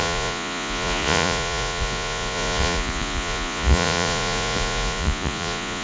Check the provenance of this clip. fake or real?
fake